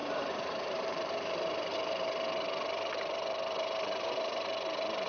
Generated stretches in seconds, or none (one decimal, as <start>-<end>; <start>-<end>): 0.0-1.7